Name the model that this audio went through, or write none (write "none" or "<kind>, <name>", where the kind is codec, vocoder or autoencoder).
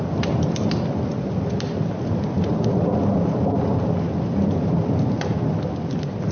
none